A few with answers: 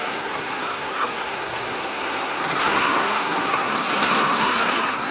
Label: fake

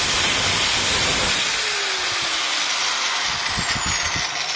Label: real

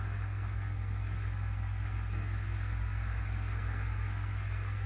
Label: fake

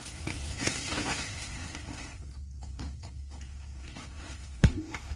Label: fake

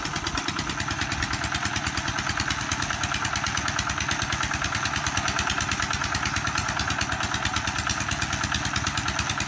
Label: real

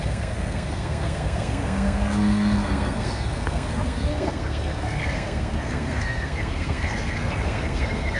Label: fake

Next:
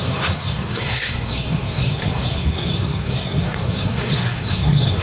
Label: fake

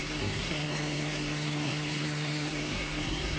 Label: fake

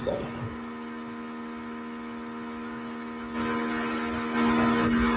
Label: real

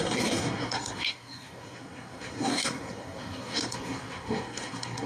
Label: fake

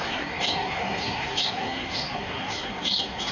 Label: fake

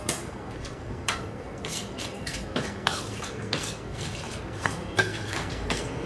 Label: fake